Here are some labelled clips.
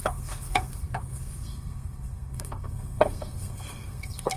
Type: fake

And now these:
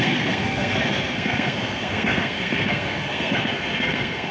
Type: fake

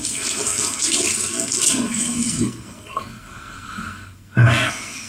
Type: fake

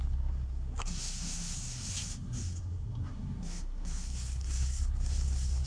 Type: fake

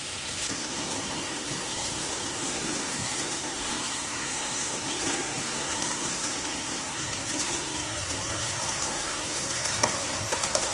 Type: fake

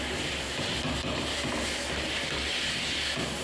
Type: real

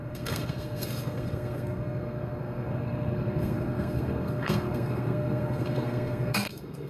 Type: fake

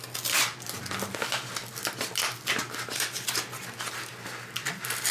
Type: real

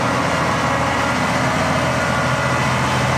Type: real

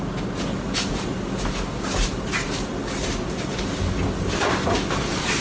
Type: real